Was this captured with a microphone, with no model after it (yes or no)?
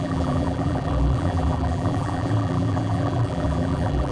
no